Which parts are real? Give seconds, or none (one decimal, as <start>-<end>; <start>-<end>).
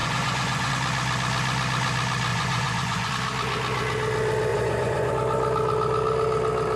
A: 0.7-2.3; 3.1-4.5; 5.1-6.8